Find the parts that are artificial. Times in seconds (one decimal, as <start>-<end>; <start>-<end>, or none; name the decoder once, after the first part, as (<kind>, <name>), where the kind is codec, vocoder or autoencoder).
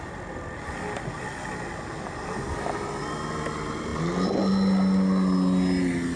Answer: none